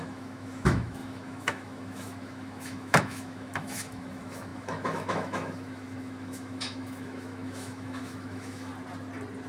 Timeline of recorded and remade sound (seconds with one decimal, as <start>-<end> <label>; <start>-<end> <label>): 0.0-8.7 remade; 8.7-9.5 recorded